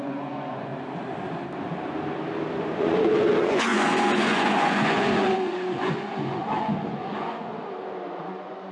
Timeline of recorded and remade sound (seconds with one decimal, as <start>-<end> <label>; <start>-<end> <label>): 0.0-0.7 remade; 0.7-2.8 recorded; 2.8-7.5 remade; 7.5-8.1 recorded; 8.1-8.7 remade